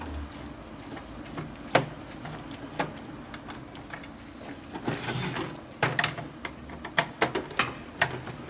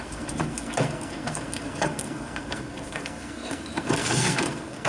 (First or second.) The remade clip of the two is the second